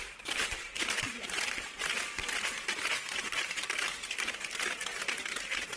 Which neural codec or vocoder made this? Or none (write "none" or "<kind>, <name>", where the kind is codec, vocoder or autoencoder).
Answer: vocoder, BigVGAN v2